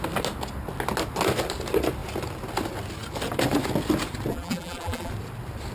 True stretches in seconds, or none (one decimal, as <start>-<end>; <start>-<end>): 0.0-4.3; 5.1-5.7